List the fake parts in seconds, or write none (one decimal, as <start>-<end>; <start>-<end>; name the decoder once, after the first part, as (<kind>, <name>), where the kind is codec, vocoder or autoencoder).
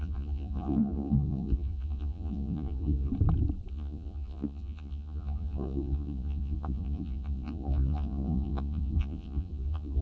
0.0-3.1 (vocoder, Vocos); 3.7-10.0